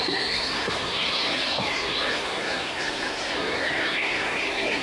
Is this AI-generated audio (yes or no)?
yes